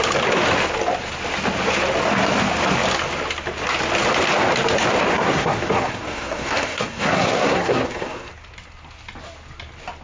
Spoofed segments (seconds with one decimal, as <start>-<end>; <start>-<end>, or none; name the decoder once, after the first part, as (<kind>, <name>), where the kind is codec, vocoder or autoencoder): 5.1-8.3 (codec, SNAC)